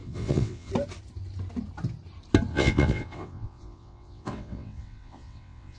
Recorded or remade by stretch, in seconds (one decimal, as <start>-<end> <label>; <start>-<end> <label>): 0.0-0.7 remade; 0.7-2.5 recorded; 2.5-5.8 remade